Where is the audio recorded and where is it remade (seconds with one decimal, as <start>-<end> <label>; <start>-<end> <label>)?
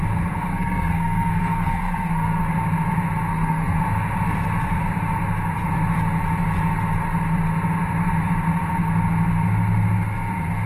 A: 0.0-0.5 recorded; 0.5-2.4 remade; 2.4-3.3 recorded; 3.3-3.8 remade; 3.8-10.7 recorded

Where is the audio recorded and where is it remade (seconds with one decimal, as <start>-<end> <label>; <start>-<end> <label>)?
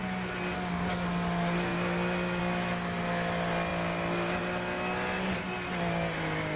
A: 0.0-6.6 recorded